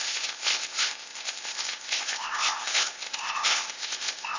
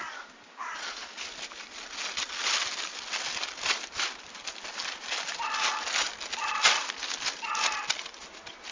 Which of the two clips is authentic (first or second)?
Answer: second